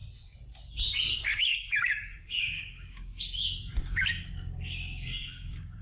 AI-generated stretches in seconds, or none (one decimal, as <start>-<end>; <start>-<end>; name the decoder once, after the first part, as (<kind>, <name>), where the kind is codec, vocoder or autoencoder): 1.1-5.8 (codec, DAC)